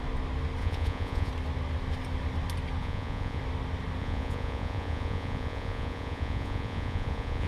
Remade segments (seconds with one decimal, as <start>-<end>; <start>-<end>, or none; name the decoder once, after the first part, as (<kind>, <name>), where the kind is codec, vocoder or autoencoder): 0.6-1.3 (vocoder, Vocos); 2.8-3.4; 4.0-7.5

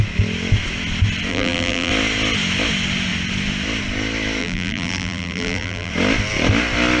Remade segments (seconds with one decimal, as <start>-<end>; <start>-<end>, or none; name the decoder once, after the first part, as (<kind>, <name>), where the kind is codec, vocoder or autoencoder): 1.3-1.9 (vocoder, BigVGAN v2); 4.4-5.9

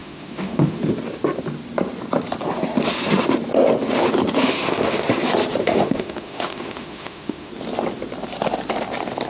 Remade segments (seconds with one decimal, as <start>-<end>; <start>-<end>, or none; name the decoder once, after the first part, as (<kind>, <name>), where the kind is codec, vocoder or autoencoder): 0.0-0.8 (autoencoder, DAC-VAE); 4.4-5.1; 5.6-7.5